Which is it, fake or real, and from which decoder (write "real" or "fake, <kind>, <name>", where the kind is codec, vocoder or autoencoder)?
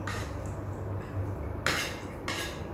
real